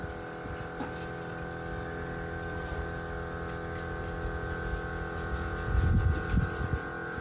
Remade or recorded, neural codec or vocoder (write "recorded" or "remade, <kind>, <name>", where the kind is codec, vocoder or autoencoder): recorded